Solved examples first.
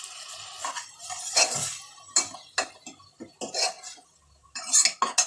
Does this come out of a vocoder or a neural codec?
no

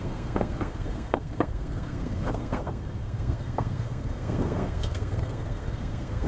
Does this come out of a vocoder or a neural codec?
yes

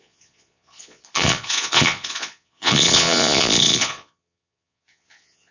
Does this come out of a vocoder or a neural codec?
yes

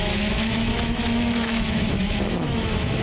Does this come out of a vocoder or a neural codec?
yes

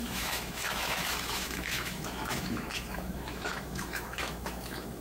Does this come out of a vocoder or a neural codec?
yes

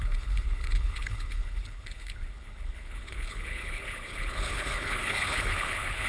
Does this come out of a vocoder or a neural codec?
yes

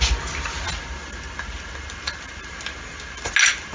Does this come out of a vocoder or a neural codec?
no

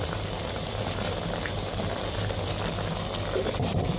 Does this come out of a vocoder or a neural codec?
no